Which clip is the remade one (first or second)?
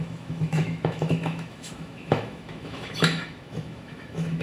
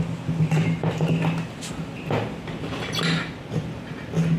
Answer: first